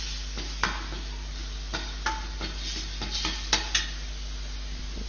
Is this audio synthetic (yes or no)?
no